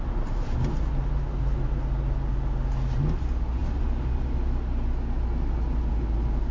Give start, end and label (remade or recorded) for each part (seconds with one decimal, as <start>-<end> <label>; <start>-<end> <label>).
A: 0.0-6.5 recorded